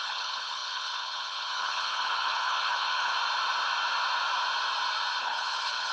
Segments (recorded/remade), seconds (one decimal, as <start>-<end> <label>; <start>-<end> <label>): 0.0-3.1 remade; 3.1-5.2 recorded; 5.2-5.9 remade